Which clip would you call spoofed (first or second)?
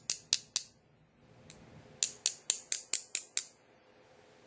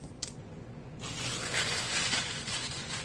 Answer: second